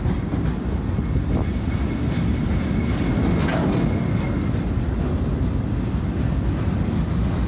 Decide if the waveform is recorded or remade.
recorded